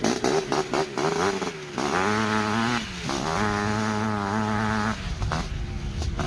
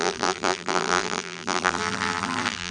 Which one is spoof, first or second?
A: second